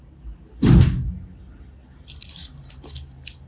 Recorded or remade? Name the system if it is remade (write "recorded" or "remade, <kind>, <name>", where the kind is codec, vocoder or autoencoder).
recorded